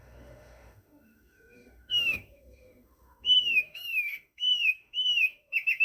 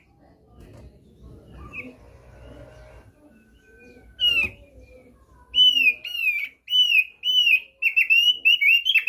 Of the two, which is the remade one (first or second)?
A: first